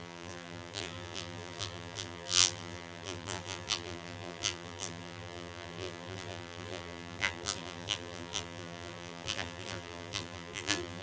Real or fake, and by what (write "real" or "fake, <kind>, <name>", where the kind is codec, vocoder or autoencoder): fake, vocoder, BigVGAN v2